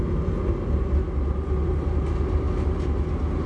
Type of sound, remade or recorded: recorded